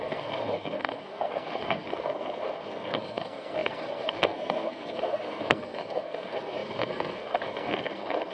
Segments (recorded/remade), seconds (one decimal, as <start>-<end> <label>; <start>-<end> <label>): 0.0-8.3 remade